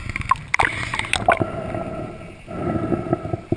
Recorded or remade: recorded